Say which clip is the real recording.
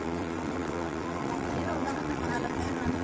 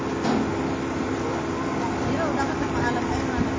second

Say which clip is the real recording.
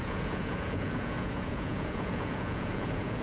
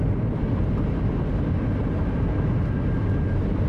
second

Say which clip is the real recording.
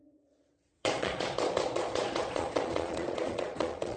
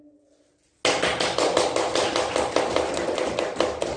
second